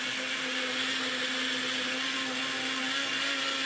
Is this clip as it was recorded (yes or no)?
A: yes